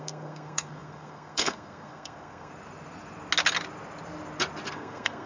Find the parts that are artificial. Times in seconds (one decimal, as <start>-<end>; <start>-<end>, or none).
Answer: 0.0-2.5; 4.7-5.3